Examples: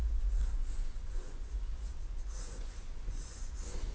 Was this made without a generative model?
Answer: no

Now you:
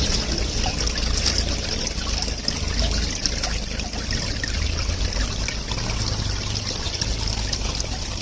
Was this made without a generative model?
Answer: yes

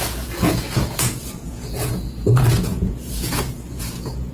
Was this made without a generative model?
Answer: no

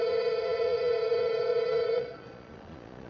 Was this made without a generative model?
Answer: no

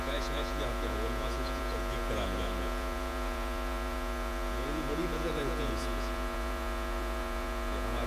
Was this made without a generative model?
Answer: no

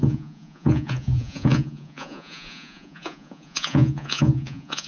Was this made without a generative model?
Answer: no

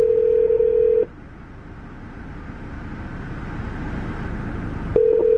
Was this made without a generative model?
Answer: yes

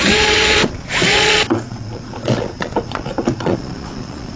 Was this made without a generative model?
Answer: no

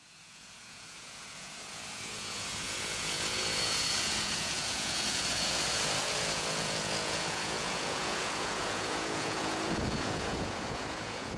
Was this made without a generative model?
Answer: no